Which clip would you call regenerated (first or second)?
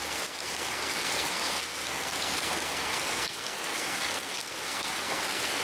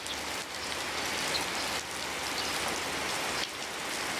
first